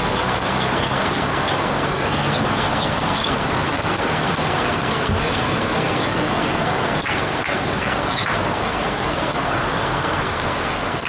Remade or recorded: remade